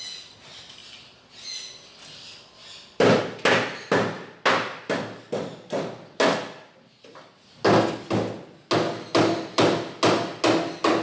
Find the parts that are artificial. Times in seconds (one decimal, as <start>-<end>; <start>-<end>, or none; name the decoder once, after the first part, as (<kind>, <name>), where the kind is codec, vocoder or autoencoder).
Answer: none